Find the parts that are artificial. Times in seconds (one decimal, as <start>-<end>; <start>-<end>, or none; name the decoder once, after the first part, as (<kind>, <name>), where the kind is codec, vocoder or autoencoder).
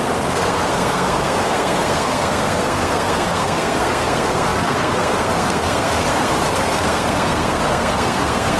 0.0-8.6 (codec, SNAC)